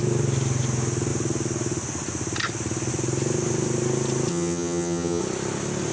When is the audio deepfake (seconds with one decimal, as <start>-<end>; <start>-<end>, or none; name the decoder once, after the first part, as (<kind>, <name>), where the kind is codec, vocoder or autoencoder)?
4.3-5.2 (vocoder, HiFi-GAN)